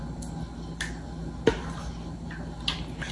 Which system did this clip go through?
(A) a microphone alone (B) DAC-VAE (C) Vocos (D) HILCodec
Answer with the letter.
A